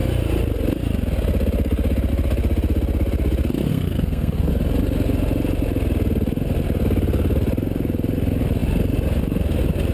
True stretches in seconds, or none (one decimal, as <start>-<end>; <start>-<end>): 0.0-3.7; 4.5-9.9